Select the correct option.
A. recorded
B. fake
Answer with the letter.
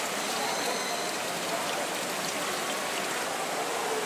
A